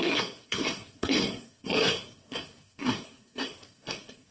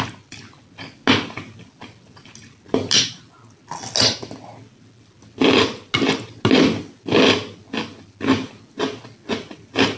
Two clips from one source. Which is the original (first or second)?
second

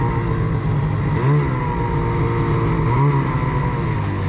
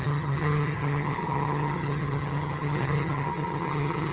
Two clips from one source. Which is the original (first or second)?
first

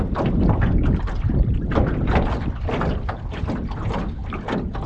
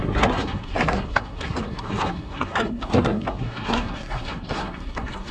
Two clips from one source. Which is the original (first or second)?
first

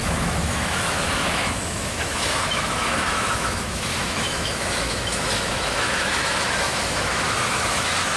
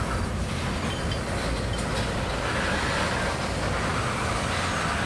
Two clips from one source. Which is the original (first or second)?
second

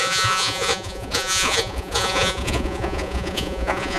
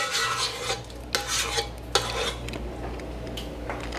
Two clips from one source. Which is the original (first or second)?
second